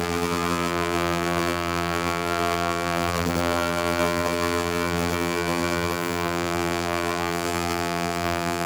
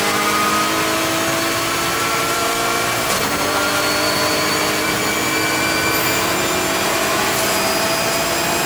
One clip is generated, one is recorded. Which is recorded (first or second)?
second